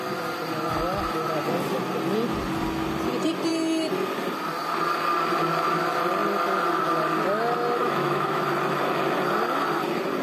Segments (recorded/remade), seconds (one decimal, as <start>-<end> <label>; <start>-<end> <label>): 0.0-7.8 recorded; 7.8-8.5 remade; 8.5-10.2 recorded